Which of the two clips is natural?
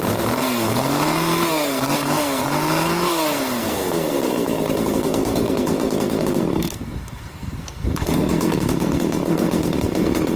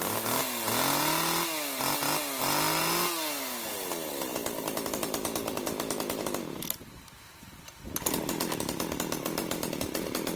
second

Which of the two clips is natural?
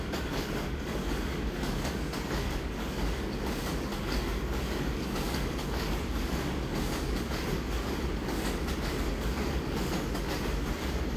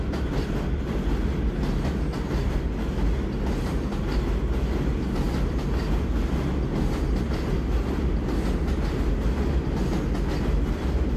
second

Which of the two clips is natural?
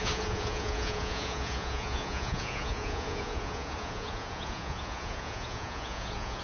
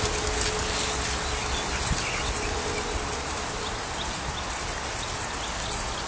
second